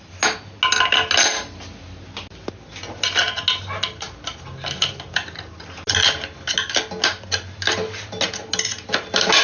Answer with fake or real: real